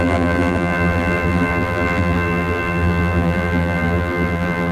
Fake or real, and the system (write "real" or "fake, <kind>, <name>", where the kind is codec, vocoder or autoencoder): fake, vocoder, BigVGAN v2